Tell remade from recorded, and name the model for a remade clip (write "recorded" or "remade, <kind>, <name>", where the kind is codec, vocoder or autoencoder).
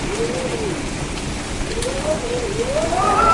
recorded